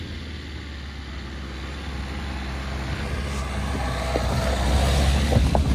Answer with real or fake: real